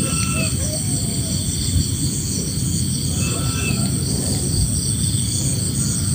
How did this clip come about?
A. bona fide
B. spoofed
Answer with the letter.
A